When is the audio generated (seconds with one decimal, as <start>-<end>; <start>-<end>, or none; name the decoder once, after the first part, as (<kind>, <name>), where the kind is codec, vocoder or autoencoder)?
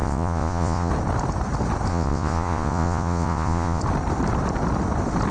0.0-0.9 (vocoder, Vocos); 1.9-3.8